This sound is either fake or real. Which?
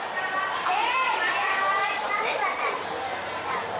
fake